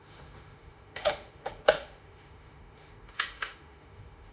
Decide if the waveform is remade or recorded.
remade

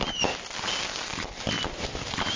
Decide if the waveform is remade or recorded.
recorded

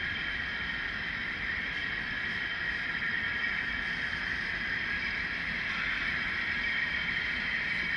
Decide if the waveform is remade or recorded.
remade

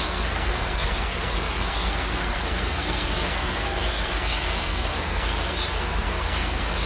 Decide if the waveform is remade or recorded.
remade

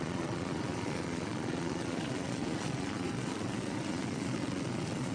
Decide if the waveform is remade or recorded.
remade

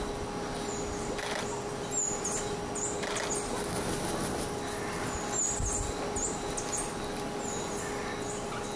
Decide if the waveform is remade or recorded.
recorded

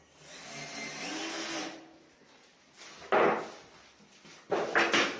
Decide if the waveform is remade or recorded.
recorded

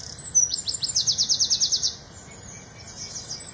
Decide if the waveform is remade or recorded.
recorded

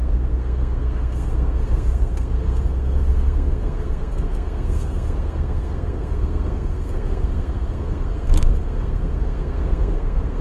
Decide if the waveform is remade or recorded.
remade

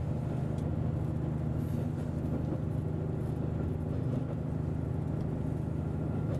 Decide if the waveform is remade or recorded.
recorded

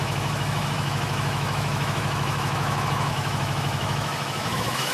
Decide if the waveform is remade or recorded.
remade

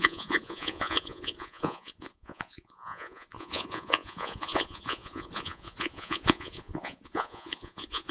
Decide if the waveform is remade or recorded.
remade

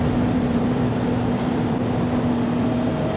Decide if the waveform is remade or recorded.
remade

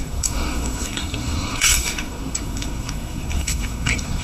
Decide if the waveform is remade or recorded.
remade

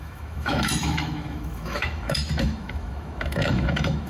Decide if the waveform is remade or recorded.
remade